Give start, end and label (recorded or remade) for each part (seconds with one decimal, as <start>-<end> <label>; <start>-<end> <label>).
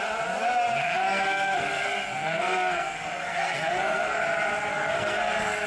0.0-0.8 recorded; 0.8-4.2 remade; 4.2-4.7 recorded; 4.7-5.7 remade